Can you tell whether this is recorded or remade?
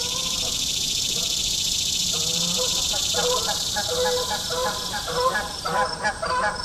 remade